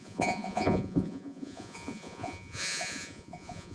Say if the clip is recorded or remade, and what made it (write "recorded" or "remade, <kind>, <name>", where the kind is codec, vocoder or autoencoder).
remade, vocoder, Vocos